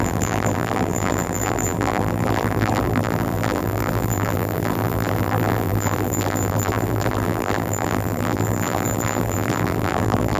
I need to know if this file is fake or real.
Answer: fake